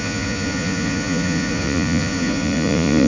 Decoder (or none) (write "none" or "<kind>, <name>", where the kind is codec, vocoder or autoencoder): vocoder, Vocos